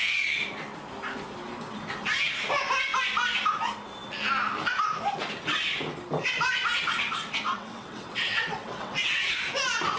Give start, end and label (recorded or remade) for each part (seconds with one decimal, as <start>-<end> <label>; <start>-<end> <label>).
0.0-7.5 recorded; 7.5-9.3 remade; 9.3-10.0 recorded